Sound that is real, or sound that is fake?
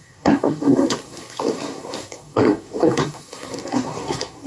fake